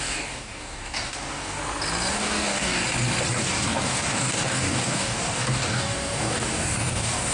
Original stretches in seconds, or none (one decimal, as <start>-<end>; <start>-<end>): 1.6-2.1; 2.8-3.3

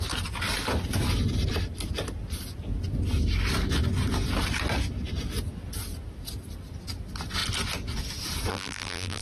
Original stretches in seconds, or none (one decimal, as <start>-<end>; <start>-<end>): 0.0-8.5

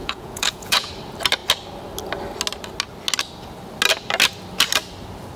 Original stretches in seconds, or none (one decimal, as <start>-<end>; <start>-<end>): 0.9-5.4

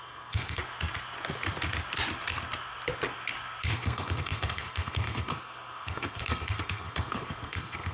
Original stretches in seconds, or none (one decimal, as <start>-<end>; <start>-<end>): 0.6-3.6

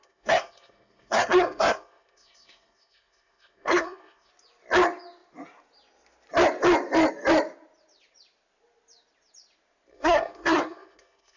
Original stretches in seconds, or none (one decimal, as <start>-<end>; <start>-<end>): 4.3-9.9

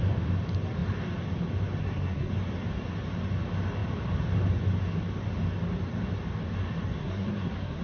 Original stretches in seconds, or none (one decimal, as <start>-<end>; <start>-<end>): 0.0-1.8; 2.3-7.0